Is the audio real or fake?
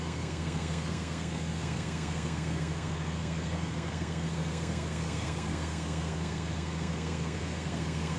fake